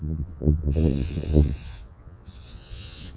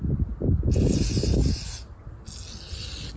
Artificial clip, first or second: first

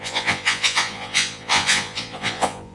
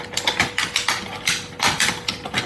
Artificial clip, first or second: first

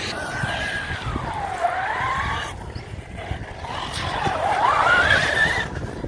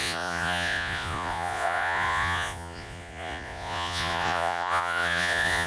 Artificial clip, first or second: second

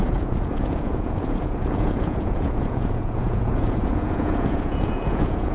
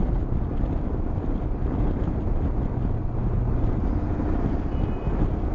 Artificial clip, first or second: first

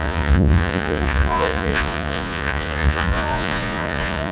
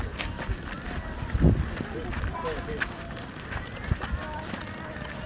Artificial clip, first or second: first